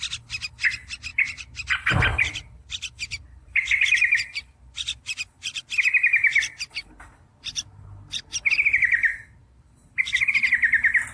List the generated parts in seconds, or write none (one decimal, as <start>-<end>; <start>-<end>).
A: 1.1-5.6; 7.3-8.5; 9.4-10.3

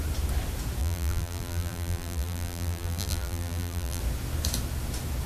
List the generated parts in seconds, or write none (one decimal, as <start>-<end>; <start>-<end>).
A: 0.8-4.0

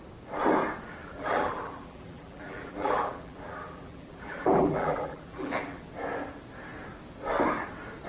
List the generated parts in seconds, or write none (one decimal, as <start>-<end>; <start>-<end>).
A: 1.0-5.9

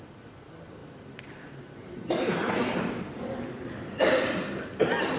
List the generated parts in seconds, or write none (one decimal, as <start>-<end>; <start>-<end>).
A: 0.0-0.8; 2.4-5.2

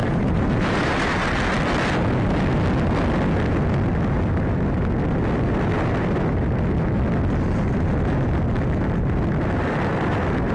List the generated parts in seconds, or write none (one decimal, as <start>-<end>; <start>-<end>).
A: 0.0-0.9